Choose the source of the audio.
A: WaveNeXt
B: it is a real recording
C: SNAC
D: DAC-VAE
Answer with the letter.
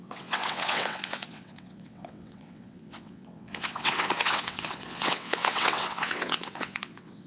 A